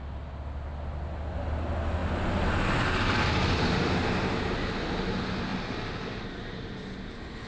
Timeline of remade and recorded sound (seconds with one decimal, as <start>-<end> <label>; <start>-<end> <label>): 0.0-2.0 recorded; 2.0-2.5 remade; 2.5-5.5 recorded; 5.5-7.1 remade; 7.1-7.5 recorded